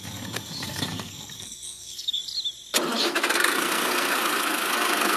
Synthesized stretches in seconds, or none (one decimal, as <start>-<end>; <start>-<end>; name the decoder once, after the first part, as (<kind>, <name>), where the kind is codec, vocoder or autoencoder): 0.0-2.2 (codec, SNAC); 3.0-5.2